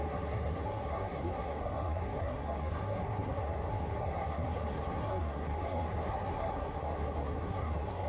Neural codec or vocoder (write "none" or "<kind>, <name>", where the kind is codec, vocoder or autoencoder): codec, SNAC